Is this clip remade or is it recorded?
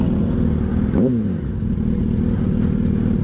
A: recorded